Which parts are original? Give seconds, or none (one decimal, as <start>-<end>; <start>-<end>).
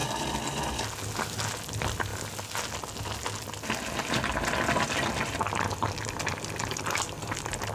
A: 0.8-7.7